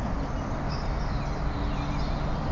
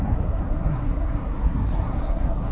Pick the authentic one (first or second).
first